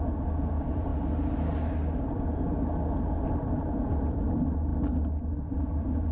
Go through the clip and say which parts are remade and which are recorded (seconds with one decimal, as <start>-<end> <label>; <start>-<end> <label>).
0.0-0.9 remade; 0.9-3.6 recorded; 3.6-4.7 remade; 4.7-5.3 recorded; 5.3-6.1 remade